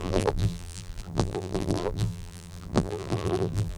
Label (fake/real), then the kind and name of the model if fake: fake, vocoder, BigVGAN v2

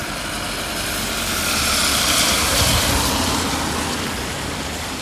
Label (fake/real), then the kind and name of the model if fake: real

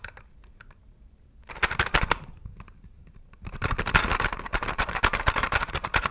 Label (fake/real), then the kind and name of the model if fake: fake, vocoder, BigVGAN v2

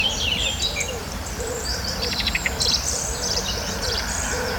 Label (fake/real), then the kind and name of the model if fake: fake, vocoder, BigVGAN v2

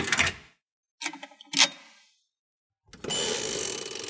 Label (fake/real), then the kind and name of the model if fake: real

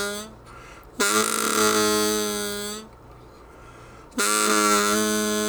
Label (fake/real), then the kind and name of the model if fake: real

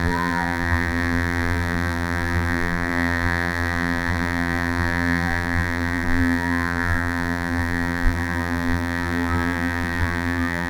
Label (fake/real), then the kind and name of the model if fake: fake, vocoder, BigVGAN v2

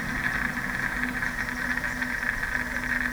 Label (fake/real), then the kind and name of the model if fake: real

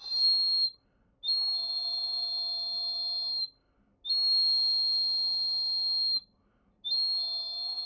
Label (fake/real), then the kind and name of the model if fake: real